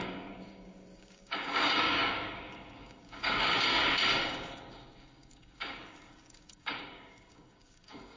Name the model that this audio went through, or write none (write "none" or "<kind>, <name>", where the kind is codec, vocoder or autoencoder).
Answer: codec, DAC